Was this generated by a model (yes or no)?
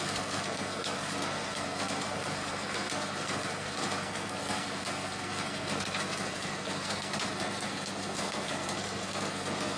yes